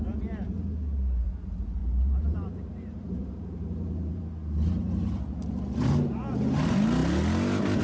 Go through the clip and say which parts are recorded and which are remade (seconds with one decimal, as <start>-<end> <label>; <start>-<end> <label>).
0.0-1.8 recorded; 1.8-4.2 remade; 4.2-7.8 recorded